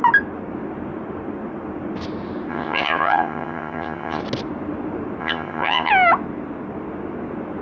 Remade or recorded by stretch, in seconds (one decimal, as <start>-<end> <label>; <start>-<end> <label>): 0.0-2.5 recorded; 2.5-4.2 remade; 4.2-5.2 recorded; 5.2-5.9 remade; 5.9-7.6 recorded